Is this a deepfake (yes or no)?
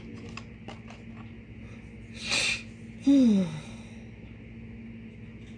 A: no